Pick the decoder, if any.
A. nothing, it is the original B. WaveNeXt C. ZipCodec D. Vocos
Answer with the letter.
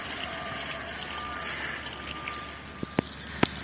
A